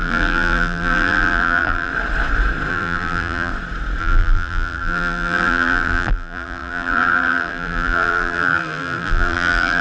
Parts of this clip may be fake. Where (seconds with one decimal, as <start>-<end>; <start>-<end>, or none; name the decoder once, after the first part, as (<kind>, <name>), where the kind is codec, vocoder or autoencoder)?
0.0-1.9 (vocoder, BigVGAN v2); 2.7-3.5; 4.0-9.8